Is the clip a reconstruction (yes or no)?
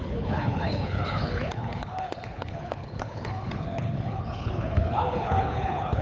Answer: yes